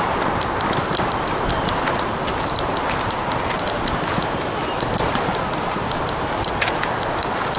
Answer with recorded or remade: recorded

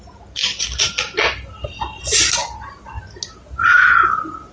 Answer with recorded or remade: recorded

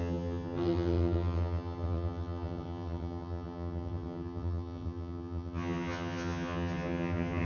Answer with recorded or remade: remade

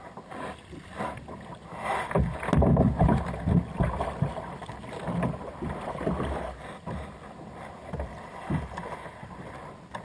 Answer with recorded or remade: recorded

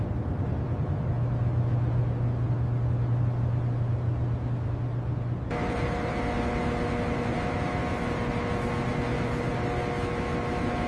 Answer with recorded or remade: recorded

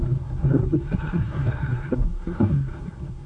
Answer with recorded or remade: remade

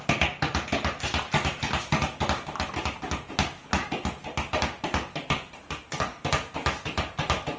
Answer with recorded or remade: recorded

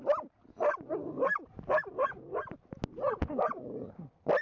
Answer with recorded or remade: recorded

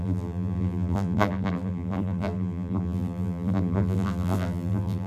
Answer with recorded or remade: remade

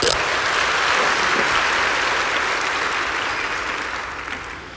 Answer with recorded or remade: recorded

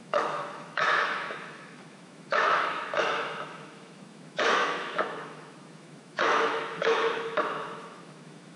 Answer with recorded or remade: remade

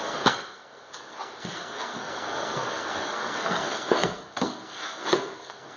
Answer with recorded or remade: remade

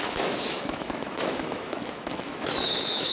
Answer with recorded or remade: remade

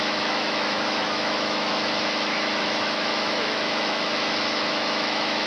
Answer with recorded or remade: remade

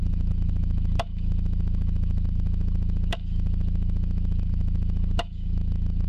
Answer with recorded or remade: remade